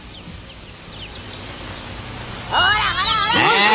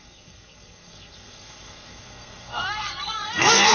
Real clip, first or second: first